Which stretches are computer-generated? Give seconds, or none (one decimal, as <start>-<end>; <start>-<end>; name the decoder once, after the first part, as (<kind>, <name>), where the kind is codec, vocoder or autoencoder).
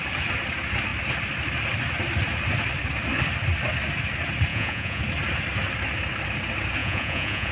4.5-5.0 (vocoder, Vocos); 6.8-7.5